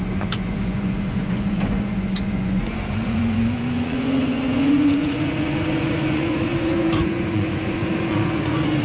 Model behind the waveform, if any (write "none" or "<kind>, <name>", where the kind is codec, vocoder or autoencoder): vocoder, Vocos